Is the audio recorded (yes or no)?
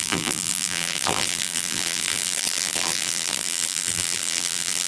no